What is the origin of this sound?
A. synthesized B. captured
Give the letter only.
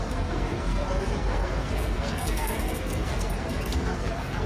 A